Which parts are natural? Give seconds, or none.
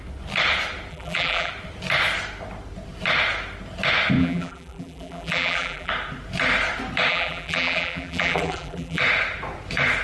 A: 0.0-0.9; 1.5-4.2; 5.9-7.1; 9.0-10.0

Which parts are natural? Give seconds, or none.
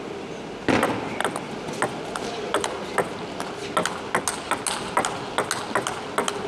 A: 0.0-6.5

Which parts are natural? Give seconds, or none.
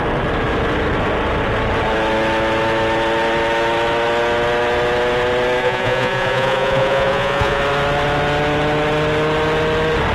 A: 0.0-5.6; 7.6-10.1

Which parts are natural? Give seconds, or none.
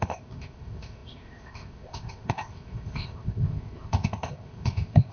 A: none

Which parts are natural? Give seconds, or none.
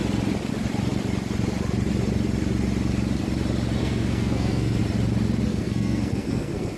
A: 0.0-3.8; 4.8-5.5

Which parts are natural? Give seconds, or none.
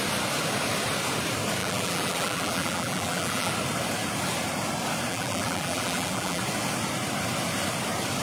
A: 0.0-1.6; 3.5-5.1; 6.4-8.2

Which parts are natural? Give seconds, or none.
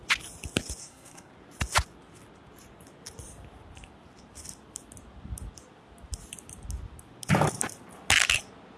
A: 0.0-0.8; 1.3-8.8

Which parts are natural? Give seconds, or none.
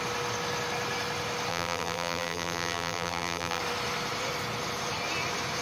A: 0.0-1.5; 3.6-5.6